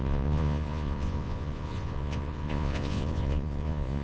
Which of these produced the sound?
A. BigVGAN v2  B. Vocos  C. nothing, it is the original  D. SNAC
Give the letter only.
B